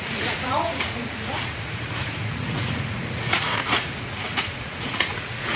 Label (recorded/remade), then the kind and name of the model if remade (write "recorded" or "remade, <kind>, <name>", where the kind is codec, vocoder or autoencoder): remade, vocoder, Vocos